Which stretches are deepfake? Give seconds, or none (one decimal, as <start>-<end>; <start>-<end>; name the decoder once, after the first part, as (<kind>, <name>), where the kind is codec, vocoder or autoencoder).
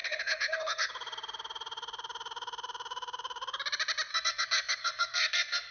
0.0-0.9 (codec, SNAC); 4.1-5.7